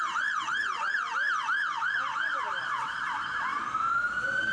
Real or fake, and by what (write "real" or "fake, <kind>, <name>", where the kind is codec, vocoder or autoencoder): fake, vocoder, BigVGAN v2